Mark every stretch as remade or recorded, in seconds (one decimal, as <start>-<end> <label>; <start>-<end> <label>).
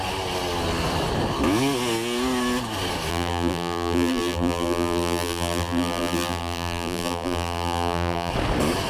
0.0-3.1 recorded; 3.1-8.3 remade; 8.3-8.9 recorded